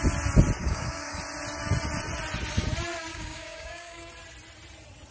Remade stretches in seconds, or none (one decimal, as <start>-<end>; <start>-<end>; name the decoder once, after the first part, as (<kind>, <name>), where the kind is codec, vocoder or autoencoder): 0.6-1.2 (codec, DAC); 3.1-4.1